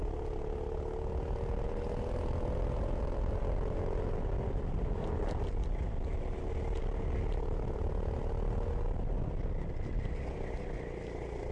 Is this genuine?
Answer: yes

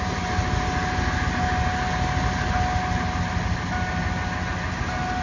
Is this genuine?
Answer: yes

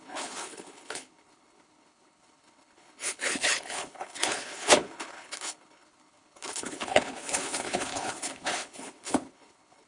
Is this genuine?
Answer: no